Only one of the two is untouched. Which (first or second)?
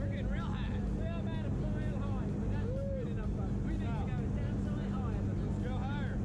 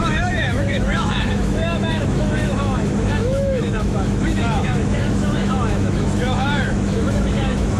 first